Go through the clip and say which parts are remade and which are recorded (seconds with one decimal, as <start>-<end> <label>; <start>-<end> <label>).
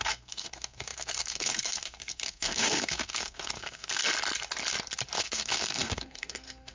0.0-4.0 remade; 4.0-5.2 recorded; 5.2-6.7 remade